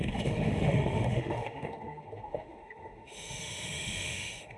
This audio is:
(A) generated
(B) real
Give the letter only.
A